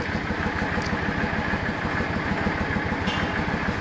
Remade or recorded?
recorded